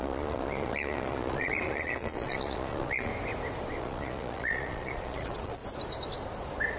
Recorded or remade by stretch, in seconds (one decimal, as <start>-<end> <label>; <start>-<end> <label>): 0.0-3.1 remade; 3.1-3.8 recorded; 3.8-5.6 remade; 5.6-6.8 recorded